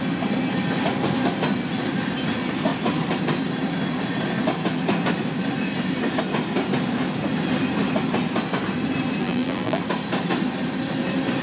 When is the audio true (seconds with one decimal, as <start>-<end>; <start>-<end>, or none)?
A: 0.0-9.2; 9.8-11.4